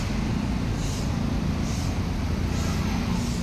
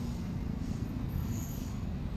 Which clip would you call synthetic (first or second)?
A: second